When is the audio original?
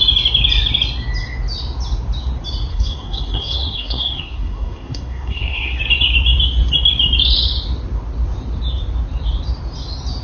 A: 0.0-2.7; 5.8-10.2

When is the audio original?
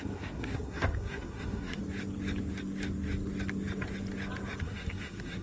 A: 1.8-4.6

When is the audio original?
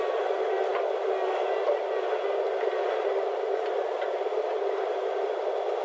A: 0.0-5.8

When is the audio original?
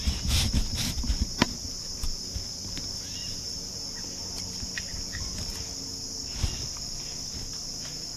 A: 0.0-8.2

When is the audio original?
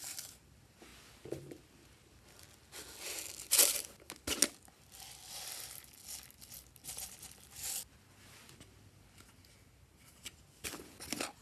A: 0.0-11.4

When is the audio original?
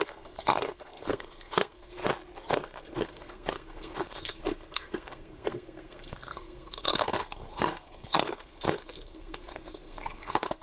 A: 2.0-2.5